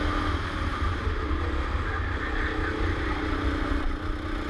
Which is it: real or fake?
real